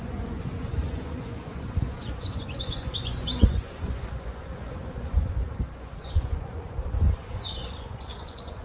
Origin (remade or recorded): remade